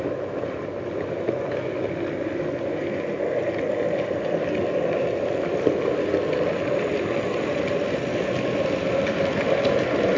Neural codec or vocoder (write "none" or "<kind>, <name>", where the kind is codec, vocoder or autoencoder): none